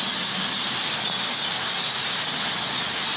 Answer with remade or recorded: recorded